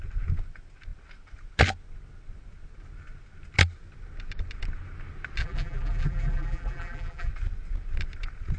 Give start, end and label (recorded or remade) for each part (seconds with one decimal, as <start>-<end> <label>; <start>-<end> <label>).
0.0-5.4 recorded; 5.4-7.3 remade; 7.3-8.6 recorded